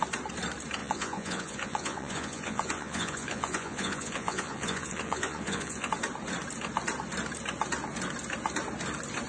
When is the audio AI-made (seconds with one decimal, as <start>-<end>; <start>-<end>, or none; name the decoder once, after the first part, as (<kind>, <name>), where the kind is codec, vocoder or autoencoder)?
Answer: 0.8-5.9 (vocoder, Vocos)